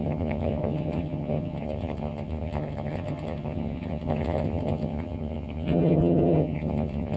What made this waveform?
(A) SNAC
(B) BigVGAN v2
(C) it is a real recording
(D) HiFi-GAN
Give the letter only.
D